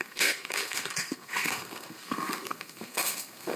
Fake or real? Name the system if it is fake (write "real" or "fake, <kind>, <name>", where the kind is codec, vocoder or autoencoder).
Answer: fake, codec, SNAC